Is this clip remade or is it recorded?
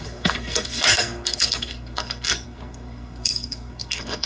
remade